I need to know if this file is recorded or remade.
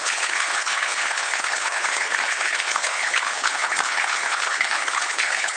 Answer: remade